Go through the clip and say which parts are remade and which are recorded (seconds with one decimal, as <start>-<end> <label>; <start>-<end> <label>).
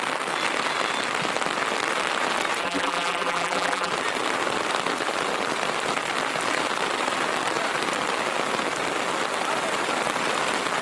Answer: 0.0-2.6 recorded; 2.6-3.9 remade; 3.9-10.8 recorded